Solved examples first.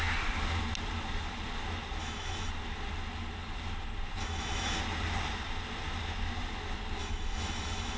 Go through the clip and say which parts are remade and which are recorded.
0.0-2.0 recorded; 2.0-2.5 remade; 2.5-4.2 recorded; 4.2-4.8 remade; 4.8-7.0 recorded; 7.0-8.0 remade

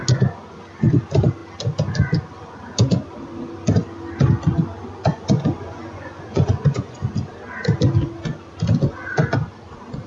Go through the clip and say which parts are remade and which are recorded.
0.0-5.1 recorded; 5.1-7.1 remade; 7.1-10.1 recorded

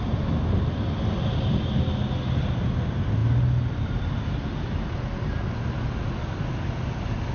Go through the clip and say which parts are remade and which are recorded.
0.0-7.3 recorded

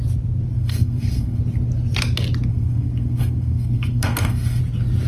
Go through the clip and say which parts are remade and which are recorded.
0.0-0.5 recorded; 0.5-1.4 remade; 1.4-2.5 recorded; 2.5-4.6 remade; 4.6-5.1 recorded

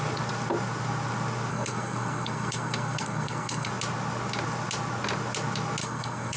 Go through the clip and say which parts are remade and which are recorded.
0.0-1.5 recorded; 1.5-3.7 remade; 3.7-5.8 recorded; 5.8-6.4 remade